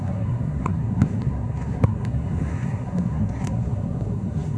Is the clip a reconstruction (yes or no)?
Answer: yes